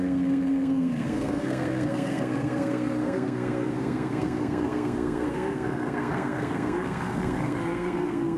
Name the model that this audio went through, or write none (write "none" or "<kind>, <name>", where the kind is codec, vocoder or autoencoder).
codec, SNAC